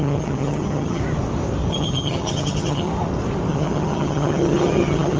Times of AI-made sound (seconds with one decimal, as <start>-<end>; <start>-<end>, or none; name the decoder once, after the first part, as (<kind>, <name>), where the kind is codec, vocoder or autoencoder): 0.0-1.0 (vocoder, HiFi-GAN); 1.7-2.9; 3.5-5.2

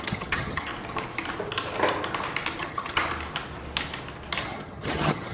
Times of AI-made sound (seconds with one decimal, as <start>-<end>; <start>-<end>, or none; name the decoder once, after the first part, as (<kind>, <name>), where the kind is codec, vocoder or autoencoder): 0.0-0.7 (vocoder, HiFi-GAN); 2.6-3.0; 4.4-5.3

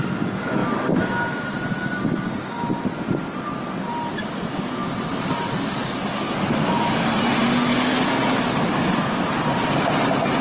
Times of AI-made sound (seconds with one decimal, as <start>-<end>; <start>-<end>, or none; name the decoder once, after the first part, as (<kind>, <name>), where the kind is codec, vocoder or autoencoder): none

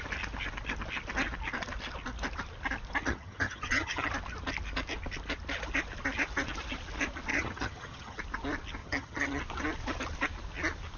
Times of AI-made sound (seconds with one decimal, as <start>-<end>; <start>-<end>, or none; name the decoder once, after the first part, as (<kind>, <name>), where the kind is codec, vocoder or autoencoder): 3.0-4.1 (vocoder, HiFi-GAN); 7.3-8.2; 8.8-9.4

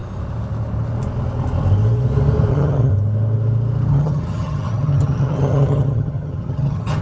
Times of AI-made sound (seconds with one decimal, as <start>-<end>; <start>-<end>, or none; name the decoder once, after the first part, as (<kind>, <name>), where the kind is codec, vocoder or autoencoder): 2.5-2.9 (vocoder, HiFi-GAN); 3.9-7.0

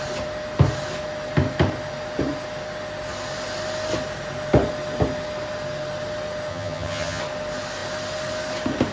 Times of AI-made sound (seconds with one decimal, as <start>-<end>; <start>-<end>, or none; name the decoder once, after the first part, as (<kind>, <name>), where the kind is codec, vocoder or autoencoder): 6.5-7.2 (vocoder, HiFi-GAN)